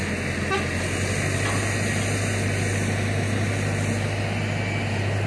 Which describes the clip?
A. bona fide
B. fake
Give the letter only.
A